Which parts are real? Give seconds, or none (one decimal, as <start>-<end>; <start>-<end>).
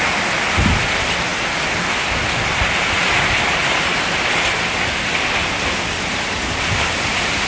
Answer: 0.0-7.5